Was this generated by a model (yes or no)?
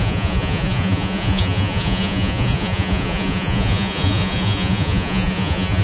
yes